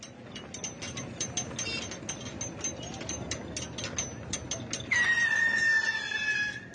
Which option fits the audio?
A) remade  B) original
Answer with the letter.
B